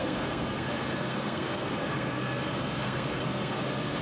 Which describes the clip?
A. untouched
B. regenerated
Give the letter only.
B